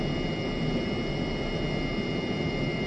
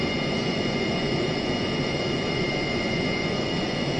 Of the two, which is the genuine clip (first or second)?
first